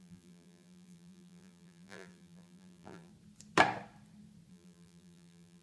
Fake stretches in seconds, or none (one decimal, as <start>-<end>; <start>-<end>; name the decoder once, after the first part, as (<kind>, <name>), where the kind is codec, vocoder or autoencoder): 0.0-3.1 (vocoder, BigVGAN v2); 4.5-5.6